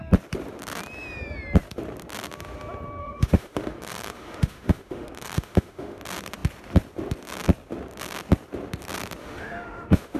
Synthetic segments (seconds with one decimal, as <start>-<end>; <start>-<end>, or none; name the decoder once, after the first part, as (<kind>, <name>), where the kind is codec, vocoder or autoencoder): 3.0-6.0 (autoencoder, DAC-VAE); 9.2-10.2